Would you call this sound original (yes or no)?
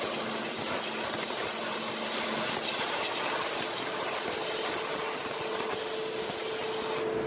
yes